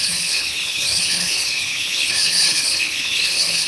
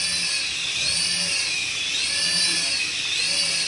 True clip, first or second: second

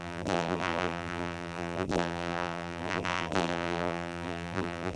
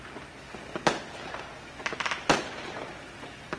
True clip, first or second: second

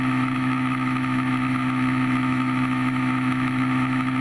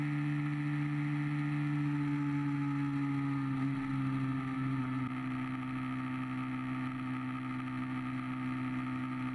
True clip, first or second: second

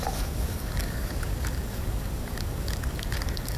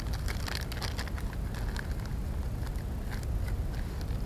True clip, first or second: second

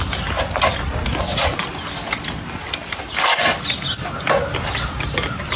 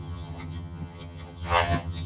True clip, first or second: first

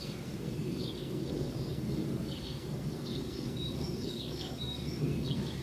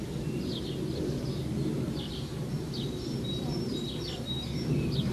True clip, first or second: second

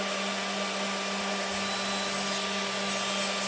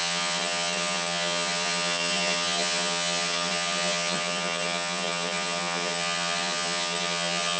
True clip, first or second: first